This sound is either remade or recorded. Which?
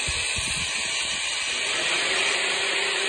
recorded